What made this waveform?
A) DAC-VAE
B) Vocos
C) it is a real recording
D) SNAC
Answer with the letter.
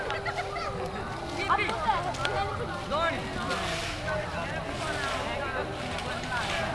C